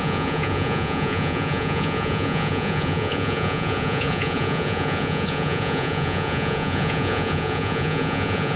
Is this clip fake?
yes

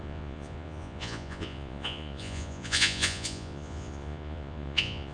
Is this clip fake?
yes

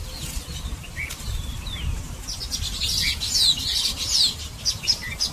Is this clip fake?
no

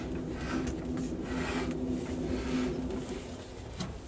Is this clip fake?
no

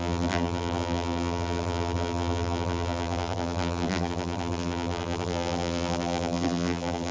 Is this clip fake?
yes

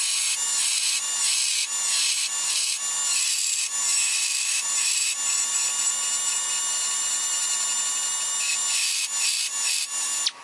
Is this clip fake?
no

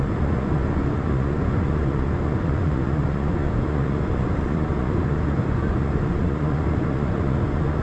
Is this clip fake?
yes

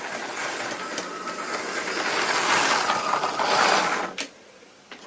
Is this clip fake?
no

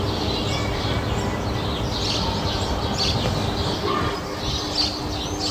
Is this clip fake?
no